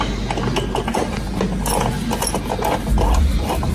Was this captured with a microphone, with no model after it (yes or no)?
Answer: yes